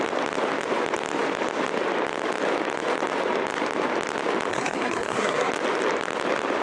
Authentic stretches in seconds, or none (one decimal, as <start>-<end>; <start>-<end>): 0.0-4.5; 5.5-6.6